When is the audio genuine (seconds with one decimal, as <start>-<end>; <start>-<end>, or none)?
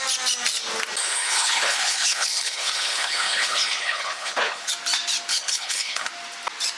0.0-1.0; 4.7-5.3; 6.1-6.8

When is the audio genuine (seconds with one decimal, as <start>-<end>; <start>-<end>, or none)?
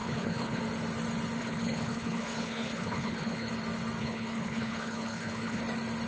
0.6-1.4; 3.5-4.0; 5.6-6.1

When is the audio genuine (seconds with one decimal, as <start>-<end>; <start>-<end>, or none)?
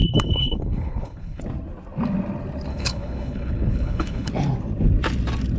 1.4-2.7; 4.3-5.6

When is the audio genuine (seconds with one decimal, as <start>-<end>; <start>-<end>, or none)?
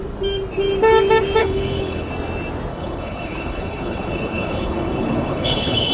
0.0-1.4; 2.1-2.7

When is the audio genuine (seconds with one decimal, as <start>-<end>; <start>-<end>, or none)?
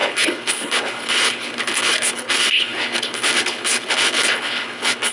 none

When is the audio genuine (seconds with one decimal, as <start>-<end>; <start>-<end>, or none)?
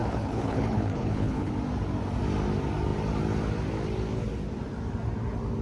1.5-5.6